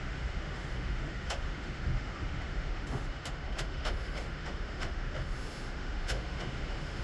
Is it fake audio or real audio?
fake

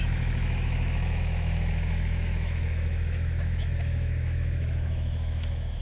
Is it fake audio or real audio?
fake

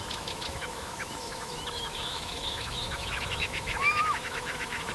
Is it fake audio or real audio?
fake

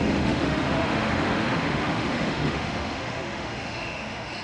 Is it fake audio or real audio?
fake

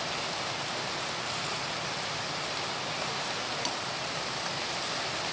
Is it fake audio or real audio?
real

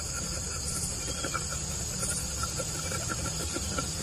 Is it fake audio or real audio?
real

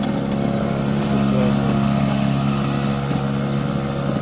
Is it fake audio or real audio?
real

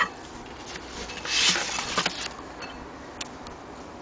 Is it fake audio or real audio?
real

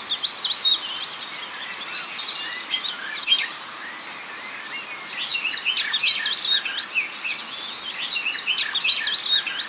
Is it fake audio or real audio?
real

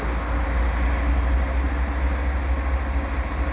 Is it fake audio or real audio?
real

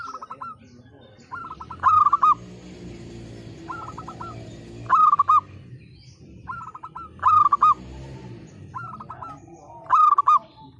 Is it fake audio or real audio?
real